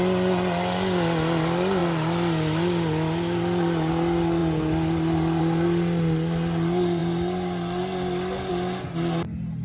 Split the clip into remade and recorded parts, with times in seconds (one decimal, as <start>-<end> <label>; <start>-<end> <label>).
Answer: 0.0-9.6 recorded